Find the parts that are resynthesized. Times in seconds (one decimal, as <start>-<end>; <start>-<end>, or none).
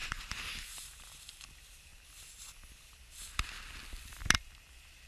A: 0.0-1.9; 4.2-5.1